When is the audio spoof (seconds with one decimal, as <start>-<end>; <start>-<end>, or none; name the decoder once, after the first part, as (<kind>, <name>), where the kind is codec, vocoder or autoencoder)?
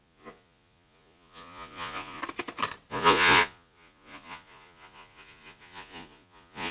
0.0-2.2 (vocoder, Vocos); 2.9-6.7